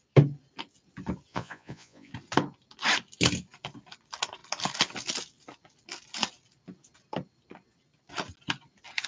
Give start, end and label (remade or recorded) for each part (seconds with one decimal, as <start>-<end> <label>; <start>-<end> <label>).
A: 0.0-1.3 recorded; 1.3-2.1 remade; 2.1-9.1 recorded